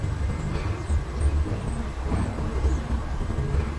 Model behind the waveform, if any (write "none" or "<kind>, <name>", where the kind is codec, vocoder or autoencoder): vocoder, BigVGAN v2